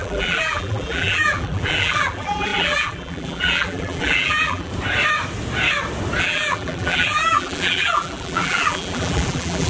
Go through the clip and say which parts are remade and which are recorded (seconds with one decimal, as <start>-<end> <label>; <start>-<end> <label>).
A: 0.0-4.7 remade; 4.7-6.2 recorded; 6.2-9.7 remade